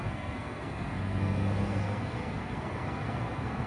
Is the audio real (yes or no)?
no